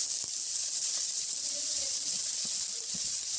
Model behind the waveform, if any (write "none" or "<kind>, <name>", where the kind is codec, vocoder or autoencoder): none